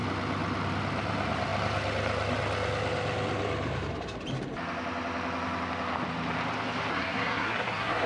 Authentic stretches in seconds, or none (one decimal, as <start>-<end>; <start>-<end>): 0.0-6.9